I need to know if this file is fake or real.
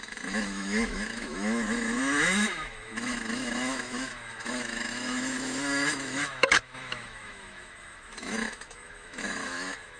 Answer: fake